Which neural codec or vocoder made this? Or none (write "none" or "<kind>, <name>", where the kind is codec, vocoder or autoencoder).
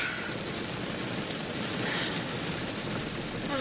none